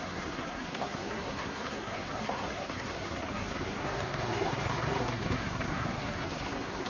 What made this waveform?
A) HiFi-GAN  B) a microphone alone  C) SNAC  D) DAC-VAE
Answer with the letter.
C